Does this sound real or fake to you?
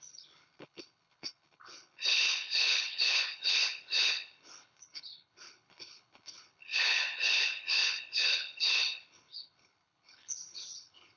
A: fake